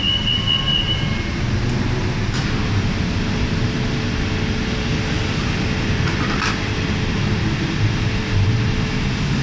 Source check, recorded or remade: recorded